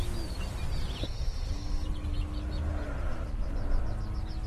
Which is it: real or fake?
real